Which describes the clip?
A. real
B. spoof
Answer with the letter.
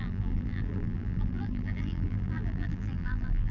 B